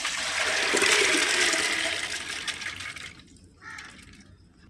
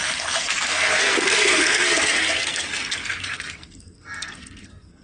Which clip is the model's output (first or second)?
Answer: second